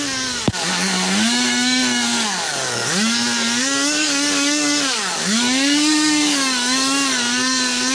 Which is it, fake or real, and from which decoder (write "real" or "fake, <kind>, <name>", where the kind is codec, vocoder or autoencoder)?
fake, codec, DAC